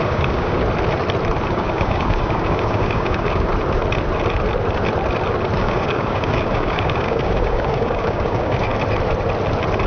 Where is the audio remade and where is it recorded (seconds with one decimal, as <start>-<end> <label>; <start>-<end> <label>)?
0.0-0.6 remade; 0.6-1.5 recorded; 1.5-3.5 remade; 3.5-5.6 recorded; 5.6-8.7 remade; 8.7-9.9 recorded